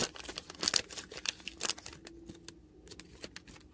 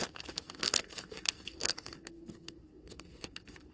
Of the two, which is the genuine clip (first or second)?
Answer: first